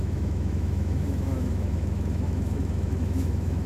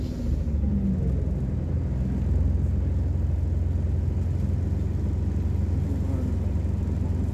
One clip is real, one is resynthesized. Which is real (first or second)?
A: second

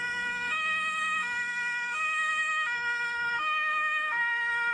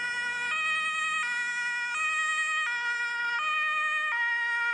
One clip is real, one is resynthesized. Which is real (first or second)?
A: second